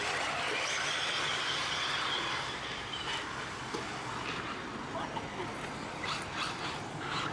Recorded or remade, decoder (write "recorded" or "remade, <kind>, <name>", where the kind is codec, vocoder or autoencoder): recorded